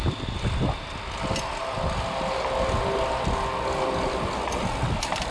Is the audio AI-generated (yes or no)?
no